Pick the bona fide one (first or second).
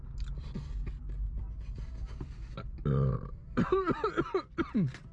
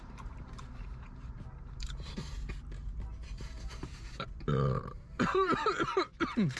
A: first